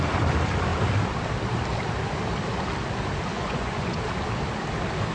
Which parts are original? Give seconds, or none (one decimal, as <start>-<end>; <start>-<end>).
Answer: 0.0-3.3; 4.0-5.1